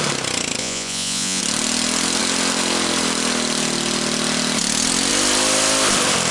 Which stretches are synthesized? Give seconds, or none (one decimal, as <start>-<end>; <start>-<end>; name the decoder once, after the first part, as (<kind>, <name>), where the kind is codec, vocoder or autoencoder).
0.6-1.4 (vocoder, Vocos)